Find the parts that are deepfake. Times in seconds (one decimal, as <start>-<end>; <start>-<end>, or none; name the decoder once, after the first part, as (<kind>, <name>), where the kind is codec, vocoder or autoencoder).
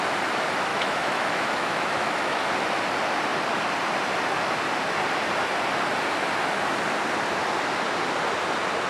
0.7-2.4 (autoencoder, DAC-VAE)